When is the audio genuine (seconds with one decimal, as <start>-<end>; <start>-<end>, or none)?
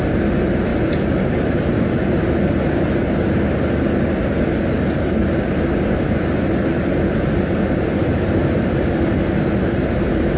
0.0-10.4